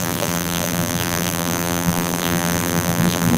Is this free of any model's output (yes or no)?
no